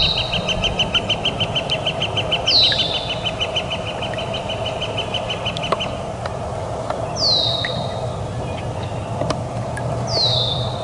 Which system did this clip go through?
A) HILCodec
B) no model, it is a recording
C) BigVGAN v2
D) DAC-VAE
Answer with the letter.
B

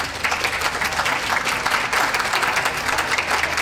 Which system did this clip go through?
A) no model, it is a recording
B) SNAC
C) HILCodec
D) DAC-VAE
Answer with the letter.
A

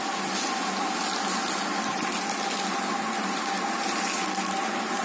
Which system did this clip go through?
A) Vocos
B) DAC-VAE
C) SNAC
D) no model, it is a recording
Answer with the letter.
D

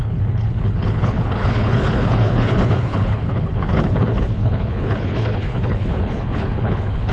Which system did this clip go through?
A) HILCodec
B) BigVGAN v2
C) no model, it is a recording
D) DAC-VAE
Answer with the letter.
A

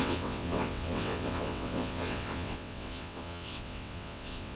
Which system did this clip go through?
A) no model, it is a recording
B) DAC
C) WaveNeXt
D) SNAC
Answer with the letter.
C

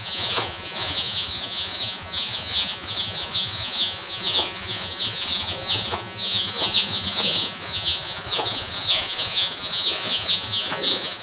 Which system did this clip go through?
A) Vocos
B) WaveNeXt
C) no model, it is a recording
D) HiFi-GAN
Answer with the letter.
A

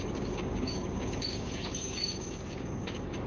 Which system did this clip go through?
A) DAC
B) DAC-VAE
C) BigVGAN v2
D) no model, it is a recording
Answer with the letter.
A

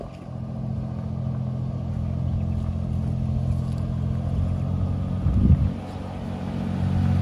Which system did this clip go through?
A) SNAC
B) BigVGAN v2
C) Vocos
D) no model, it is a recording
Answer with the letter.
D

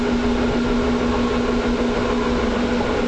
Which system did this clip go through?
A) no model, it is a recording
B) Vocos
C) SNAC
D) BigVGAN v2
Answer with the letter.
A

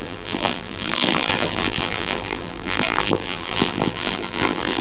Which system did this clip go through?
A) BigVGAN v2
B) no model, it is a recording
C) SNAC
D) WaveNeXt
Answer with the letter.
A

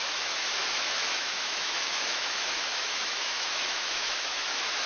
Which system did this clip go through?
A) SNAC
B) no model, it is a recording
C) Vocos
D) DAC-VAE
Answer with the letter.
D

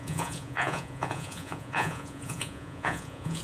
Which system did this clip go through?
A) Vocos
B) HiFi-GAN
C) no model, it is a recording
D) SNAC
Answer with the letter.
A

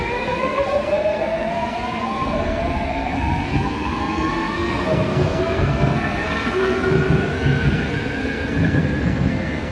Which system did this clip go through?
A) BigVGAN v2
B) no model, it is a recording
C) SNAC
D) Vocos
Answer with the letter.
C